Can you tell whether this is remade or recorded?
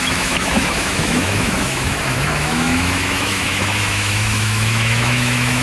remade